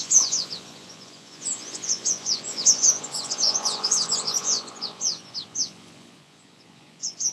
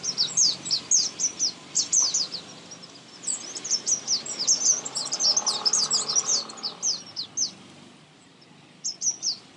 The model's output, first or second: first